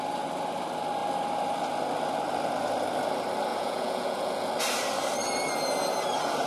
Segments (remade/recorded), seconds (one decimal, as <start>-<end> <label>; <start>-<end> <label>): 0.0-3.5 recorded; 3.5-4.5 remade; 4.5-6.5 recorded